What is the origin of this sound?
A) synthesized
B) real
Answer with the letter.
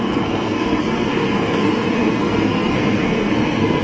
A